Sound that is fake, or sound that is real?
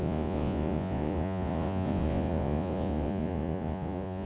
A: fake